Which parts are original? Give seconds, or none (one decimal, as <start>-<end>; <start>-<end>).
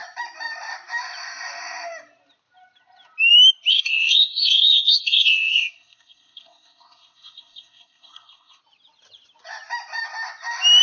0.0-3.7; 8.6-10.8